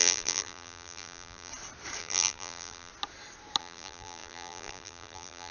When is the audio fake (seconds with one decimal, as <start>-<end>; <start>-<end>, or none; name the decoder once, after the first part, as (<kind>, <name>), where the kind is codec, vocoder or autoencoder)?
0.0-1.5 (vocoder, BigVGAN v2); 2.0-2.9; 3.6-5.5